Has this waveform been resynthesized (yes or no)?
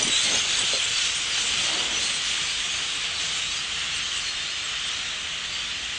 no